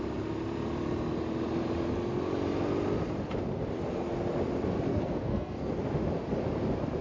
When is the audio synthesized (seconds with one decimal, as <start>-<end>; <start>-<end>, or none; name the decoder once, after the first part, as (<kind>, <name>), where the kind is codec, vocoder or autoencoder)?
4.9-5.7 (codec, SNAC)